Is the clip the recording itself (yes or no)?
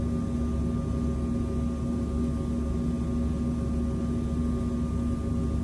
yes